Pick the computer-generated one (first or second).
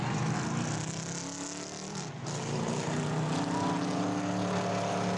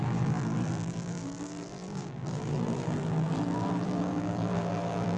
second